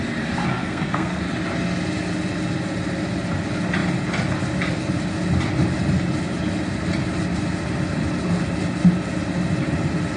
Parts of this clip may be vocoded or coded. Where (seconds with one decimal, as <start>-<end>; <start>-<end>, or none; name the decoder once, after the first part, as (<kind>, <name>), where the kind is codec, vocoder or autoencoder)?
0.5-1.2 (codec, SNAC)